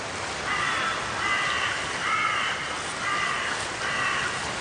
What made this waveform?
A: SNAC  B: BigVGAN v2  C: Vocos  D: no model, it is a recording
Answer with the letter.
D